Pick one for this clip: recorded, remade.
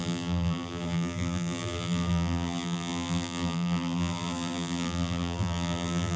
remade